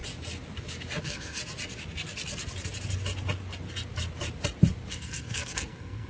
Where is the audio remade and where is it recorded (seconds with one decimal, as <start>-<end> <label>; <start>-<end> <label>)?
0.0-1.0 recorded; 1.0-1.4 remade; 1.4-4.9 recorded; 4.9-6.1 remade